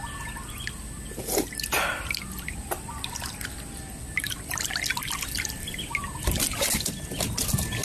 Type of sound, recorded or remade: recorded